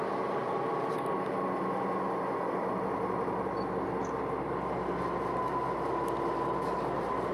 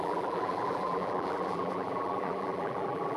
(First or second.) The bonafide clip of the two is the first